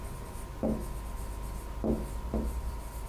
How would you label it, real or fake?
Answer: real